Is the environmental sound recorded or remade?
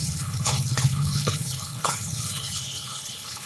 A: remade